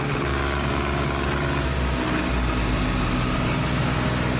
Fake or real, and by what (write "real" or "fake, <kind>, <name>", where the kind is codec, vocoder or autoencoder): real